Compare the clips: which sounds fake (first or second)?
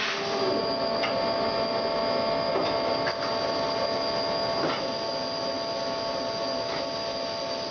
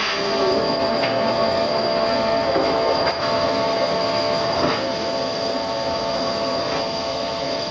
second